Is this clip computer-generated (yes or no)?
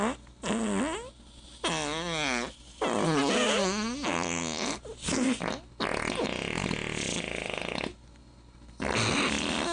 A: no